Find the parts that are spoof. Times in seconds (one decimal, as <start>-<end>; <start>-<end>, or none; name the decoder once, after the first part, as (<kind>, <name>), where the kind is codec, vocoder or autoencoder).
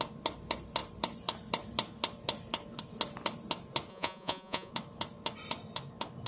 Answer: 3.9-4.7 (vocoder, Vocos)